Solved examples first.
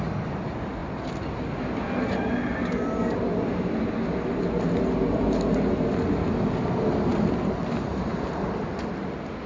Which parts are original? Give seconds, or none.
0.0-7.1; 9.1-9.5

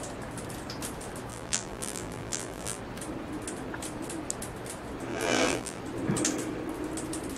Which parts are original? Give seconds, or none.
0.0-1.3; 2.8-5.1; 5.8-7.4

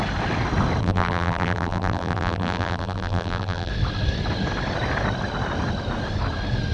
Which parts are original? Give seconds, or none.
0.0-0.8; 3.7-6.7

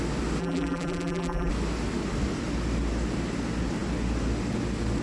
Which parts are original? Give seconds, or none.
0.0-0.4; 1.5-5.0

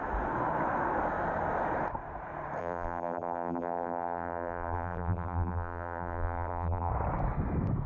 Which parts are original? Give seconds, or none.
0.0-2.6; 6.9-7.9

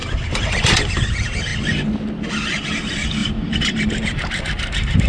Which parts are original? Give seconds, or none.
1.1-3.2

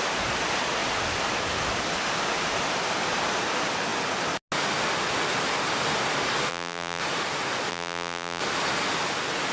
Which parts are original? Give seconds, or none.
0.0-6.5; 7.0-7.7; 8.4-9.5

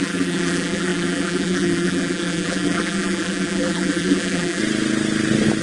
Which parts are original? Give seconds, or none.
4.6-5.6